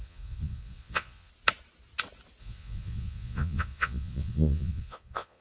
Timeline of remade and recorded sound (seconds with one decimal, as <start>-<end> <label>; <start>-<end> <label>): 0.0-1.3 remade; 1.3-2.4 recorded; 2.4-5.4 remade